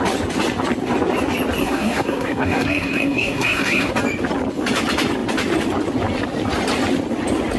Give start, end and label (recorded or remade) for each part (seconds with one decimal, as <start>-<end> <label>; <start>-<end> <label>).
0.0-1.6 recorded; 1.6-3.9 remade; 3.9-7.6 recorded